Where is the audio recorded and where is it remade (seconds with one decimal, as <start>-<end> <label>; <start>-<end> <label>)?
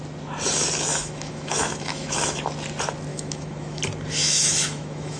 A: 0.0-0.9 recorded; 0.9-2.4 remade; 2.4-3.1 recorded; 3.1-3.8 remade; 3.8-4.2 recorded; 4.2-5.2 remade